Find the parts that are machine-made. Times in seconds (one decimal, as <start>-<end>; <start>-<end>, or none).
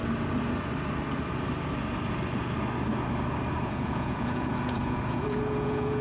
3.6-6.0